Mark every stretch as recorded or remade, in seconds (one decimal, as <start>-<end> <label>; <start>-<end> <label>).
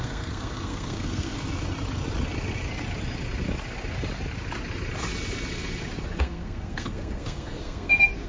0.0-1.3 remade; 1.3-6.2 recorded; 6.2-8.3 remade